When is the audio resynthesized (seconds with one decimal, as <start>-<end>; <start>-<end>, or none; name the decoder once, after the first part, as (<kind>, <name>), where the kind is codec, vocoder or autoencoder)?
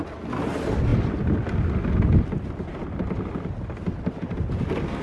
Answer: none